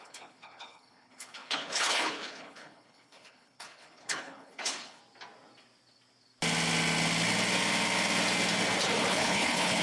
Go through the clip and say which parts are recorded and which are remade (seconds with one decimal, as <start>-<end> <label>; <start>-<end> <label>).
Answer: 0.0-5.0 remade; 5.0-9.1 recorded; 9.1-9.8 remade